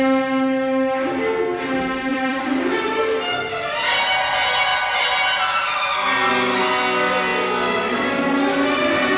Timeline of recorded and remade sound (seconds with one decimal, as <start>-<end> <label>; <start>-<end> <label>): 0.0-2.1 recorded; 2.1-3.0 remade; 3.0-9.2 recorded

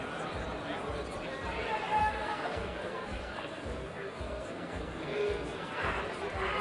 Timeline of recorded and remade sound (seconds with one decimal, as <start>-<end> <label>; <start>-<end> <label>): 0.0-2.0 recorded; 2.0-6.0 remade; 6.0-6.6 recorded